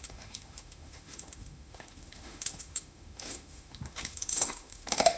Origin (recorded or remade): remade